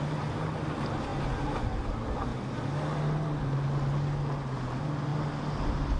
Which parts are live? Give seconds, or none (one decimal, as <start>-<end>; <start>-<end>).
0.0-6.0